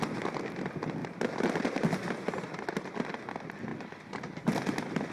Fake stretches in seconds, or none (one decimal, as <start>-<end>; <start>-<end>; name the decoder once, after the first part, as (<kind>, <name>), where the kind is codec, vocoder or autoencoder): 1.0-1.8 (vocoder, BigVGAN v2); 3.7-5.1